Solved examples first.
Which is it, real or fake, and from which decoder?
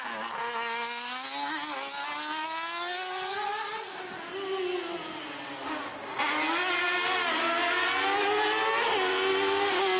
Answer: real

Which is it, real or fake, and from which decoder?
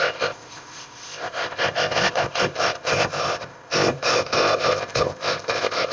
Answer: fake, codec, ZipCodec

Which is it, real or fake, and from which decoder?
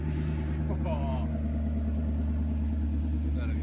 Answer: real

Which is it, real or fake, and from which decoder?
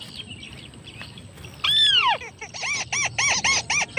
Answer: real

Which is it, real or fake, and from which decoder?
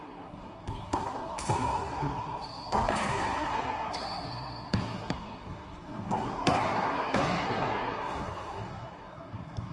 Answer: fake, codec, SNAC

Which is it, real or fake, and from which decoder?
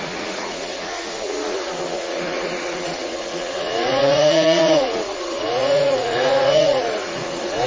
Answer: fake, vocoder, Vocos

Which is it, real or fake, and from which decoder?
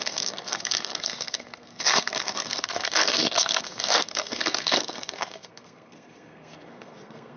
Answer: fake, codec, SNAC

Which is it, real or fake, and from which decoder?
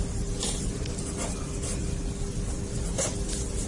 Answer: real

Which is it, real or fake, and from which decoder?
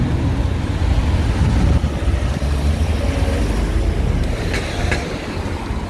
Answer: real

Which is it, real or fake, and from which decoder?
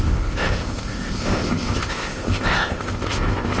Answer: fake, codec, ZipCodec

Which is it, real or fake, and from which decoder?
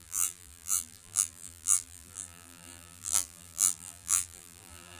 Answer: fake, vocoder, BigVGAN v2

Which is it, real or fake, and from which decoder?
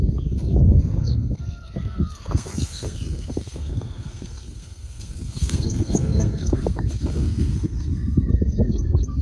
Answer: fake, codec, SNAC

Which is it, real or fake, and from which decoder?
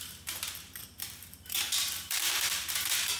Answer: fake, vocoder, BigVGAN v2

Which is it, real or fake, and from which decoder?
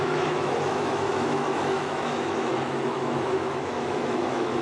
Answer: fake, autoencoder, DAC-VAE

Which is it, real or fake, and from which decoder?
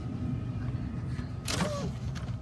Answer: real